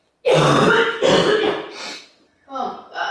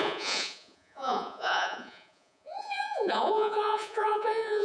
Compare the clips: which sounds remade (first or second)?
second